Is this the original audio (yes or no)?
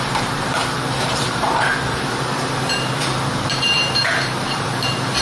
no